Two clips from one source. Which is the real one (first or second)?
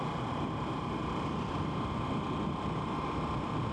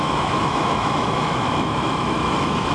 first